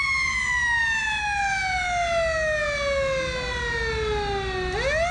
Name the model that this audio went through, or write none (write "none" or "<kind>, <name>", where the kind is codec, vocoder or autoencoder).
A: none